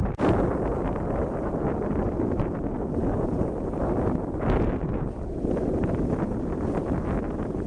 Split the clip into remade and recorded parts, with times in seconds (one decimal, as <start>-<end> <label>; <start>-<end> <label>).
0.0-3.0 recorded; 3.0-3.5 remade; 3.5-7.7 recorded